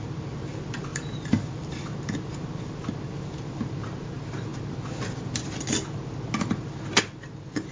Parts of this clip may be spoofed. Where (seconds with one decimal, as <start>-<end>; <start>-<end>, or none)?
0.9-1.9

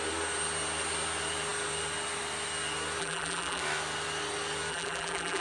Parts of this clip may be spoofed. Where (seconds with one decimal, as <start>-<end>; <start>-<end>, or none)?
3.0-3.6; 4.7-5.4

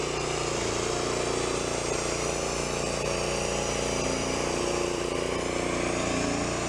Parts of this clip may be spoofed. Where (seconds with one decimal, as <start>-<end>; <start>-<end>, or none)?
4.2-5.1